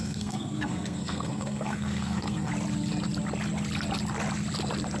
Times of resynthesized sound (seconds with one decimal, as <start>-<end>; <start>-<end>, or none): 0.0-2.5